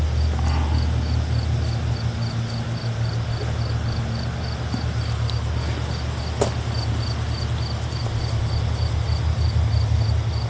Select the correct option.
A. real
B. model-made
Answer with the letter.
A